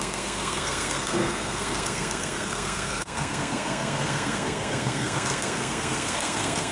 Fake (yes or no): yes